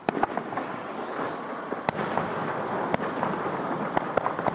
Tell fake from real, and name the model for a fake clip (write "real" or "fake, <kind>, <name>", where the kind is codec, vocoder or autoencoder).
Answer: real